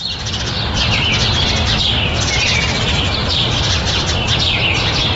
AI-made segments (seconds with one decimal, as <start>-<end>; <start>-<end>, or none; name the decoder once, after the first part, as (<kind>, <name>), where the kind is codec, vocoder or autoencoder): 3.2-4.0 (vocoder, BigVGAN v2)